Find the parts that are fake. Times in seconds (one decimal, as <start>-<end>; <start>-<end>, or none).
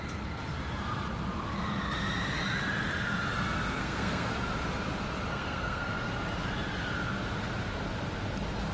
3.8-4.4; 5.3-5.9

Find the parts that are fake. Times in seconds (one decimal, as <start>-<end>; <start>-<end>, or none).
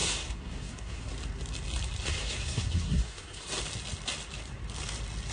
0.0-1.1; 2.1-3.5